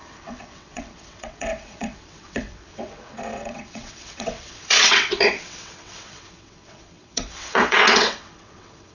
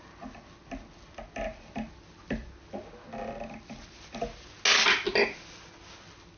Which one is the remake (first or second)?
first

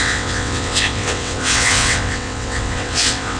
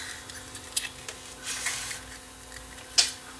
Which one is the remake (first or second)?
first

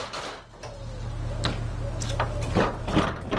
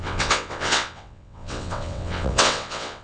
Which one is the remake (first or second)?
second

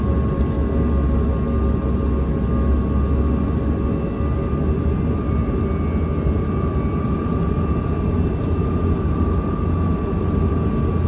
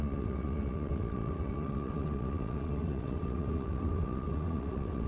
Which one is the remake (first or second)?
second